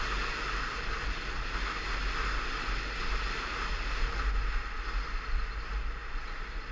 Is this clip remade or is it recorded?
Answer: recorded